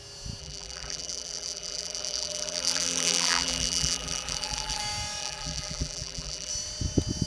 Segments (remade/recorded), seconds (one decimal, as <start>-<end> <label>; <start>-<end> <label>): 0.0-0.4 recorded; 0.4-4.8 remade; 4.8-5.2 recorded; 5.2-6.5 remade; 6.5-7.3 recorded